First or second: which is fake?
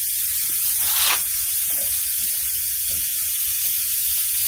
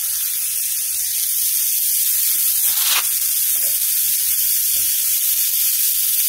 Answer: first